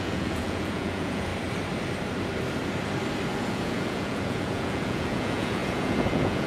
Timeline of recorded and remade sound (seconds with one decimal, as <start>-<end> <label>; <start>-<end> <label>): 0.0-1.3 remade; 1.3-3.3 recorded; 3.3-6.5 remade